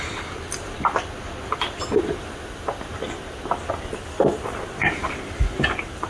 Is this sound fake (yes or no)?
no